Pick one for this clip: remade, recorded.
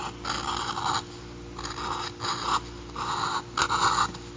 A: recorded